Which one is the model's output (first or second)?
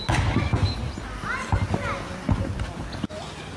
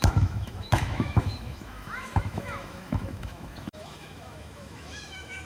second